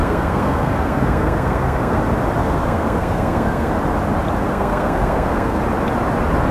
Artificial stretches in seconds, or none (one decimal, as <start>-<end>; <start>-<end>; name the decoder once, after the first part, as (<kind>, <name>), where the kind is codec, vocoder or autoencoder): 0.0-2.0 (codec, SNAC); 2.4-3.7; 4.5-5.6